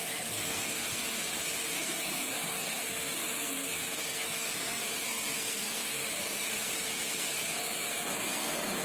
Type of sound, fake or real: fake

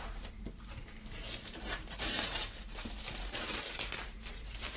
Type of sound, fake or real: fake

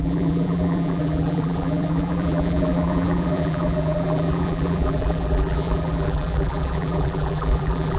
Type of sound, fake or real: fake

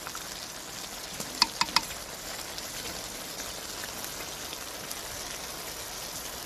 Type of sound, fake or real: real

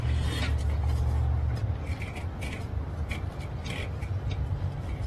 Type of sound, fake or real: real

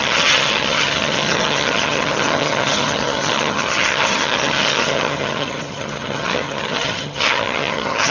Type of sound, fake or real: fake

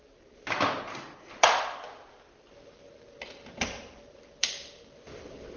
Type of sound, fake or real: fake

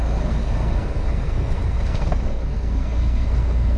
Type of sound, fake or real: fake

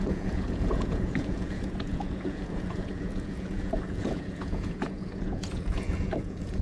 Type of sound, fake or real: fake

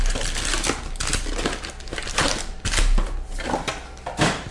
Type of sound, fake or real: real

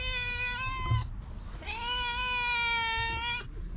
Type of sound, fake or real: real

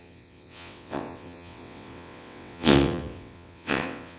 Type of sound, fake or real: fake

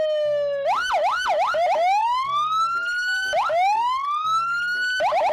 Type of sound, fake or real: real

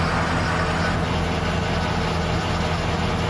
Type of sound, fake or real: real